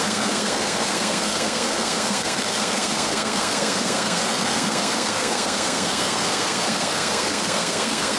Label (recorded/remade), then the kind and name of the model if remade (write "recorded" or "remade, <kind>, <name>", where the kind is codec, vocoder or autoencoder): remade, codec, SNAC